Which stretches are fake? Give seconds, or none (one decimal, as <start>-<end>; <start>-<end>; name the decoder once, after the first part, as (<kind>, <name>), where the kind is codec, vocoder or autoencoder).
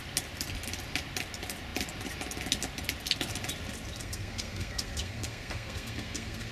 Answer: 4.0-6.5 (codec, SNAC)